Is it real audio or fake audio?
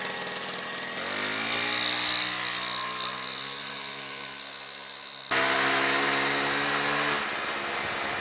real